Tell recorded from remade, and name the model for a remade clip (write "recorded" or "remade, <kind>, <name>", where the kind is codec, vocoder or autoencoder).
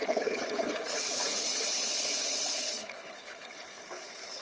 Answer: remade, codec, HILCodec